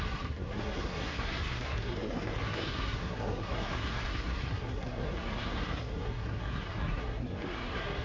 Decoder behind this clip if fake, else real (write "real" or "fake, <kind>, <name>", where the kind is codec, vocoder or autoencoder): fake, codec, SNAC